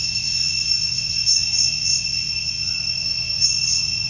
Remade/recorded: remade